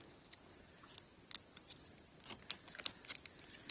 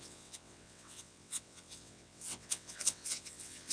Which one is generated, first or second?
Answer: second